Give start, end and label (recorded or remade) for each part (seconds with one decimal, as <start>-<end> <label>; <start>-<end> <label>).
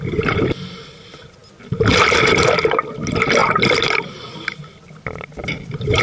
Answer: 0.0-3.4 recorded; 3.4-4.1 remade; 4.1-5.4 recorded; 5.4-6.0 remade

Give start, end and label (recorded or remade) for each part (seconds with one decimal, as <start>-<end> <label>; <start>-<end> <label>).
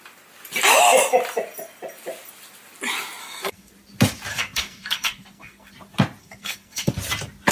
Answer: 0.0-3.2 recorded; 3.2-3.7 remade; 3.7-4.3 recorded; 4.3-5.7 remade; 5.7-6.2 recorded; 6.2-6.9 remade; 6.9-7.5 recorded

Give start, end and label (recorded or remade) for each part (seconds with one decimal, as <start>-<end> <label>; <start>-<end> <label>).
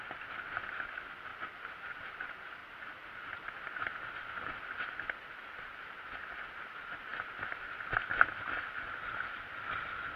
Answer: 0.0-10.2 recorded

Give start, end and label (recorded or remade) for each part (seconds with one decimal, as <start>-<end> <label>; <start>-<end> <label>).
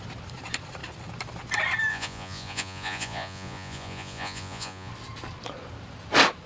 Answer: 0.0-1.9 recorded; 1.9-4.9 remade; 4.9-6.5 recorded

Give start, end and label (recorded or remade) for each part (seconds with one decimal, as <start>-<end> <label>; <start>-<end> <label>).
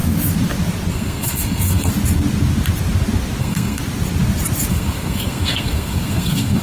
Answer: 0.0-0.9 recorded; 0.9-1.9 remade; 1.9-3.4 recorded; 3.4-3.8 remade; 3.8-4.7 recorded; 4.7-6.6 remade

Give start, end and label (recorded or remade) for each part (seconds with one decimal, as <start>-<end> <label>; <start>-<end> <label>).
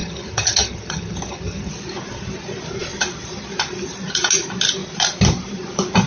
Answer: 0.0-1.7 remade; 1.7-6.1 recorded